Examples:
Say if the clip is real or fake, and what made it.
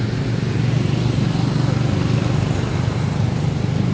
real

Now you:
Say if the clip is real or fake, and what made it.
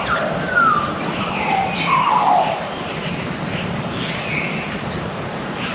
real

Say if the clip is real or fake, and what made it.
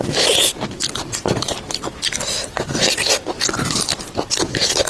real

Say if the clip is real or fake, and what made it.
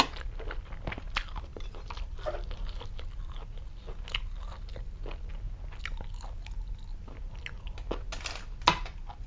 real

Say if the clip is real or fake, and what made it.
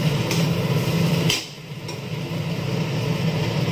real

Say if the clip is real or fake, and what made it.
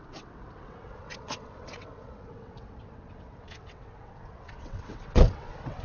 fake, vocoder, WaveNeXt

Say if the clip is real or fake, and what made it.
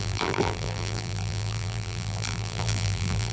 fake, vocoder, BigVGAN v2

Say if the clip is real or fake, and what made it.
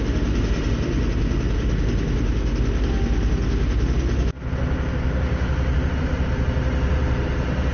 real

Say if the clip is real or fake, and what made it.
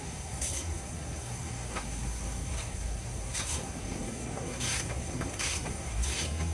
fake, codec, SNAC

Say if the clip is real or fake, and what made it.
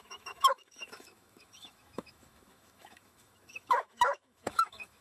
fake, autoencoder, DAC-VAE